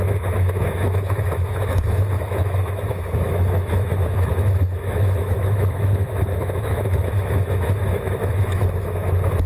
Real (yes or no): no